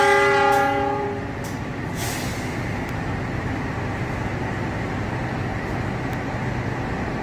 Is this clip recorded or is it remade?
recorded